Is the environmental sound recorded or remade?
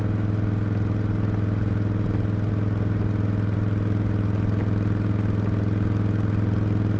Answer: recorded